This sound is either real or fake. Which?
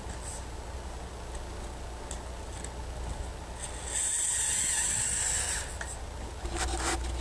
real